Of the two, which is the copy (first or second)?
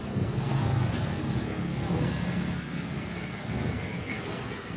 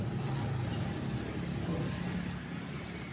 first